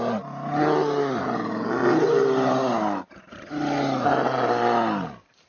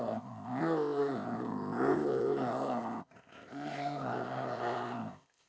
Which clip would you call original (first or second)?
first